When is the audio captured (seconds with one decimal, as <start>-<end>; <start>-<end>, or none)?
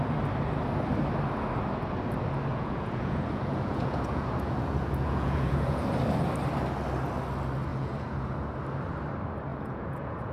0.0-2.5; 5.8-7.7; 8.6-9.5